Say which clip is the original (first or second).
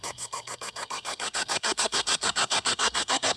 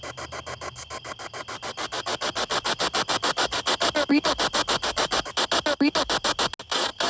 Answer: second